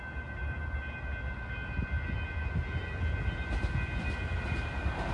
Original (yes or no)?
yes